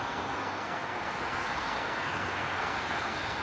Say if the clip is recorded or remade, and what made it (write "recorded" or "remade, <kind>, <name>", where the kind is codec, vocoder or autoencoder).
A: remade, codec, SNAC